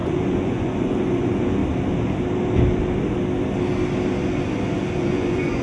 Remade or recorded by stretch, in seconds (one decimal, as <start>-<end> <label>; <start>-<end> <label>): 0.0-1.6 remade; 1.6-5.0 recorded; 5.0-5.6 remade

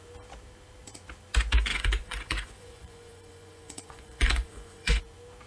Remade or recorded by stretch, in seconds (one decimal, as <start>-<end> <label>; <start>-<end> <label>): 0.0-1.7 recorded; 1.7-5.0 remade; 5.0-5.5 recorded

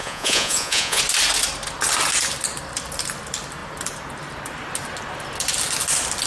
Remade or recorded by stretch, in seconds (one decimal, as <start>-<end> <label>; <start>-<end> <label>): 0.0-1.0 remade; 1.0-6.3 recorded

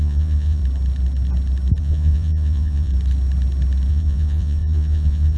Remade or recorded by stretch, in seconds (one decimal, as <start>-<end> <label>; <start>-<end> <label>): 0.0-0.6 remade; 0.6-1.8 recorded; 1.8-2.9 remade; 2.9-3.9 recorded; 3.9-5.4 remade

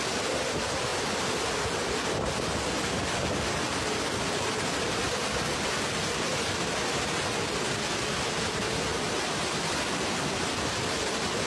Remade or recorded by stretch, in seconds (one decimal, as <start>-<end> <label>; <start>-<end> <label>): 0.0-11.5 recorded